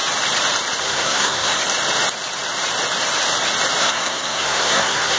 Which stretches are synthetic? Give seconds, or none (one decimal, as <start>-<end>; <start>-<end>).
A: 0.8-1.6; 3.8-5.2